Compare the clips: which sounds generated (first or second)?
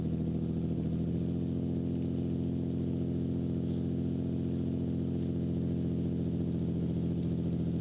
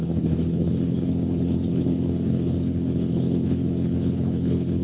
second